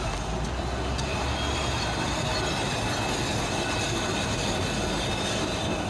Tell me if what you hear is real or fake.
real